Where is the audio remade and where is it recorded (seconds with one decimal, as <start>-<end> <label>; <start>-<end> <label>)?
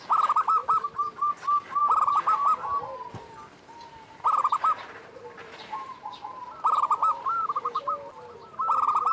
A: 0.0-0.6 recorded; 0.6-1.1 remade; 1.1-4.4 recorded; 4.4-8.1 remade; 8.1-9.1 recorded